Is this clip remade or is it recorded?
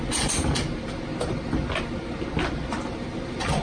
remade